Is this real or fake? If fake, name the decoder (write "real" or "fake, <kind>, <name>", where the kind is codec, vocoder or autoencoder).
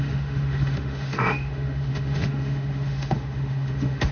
fake, autoencoder, DAC-VAE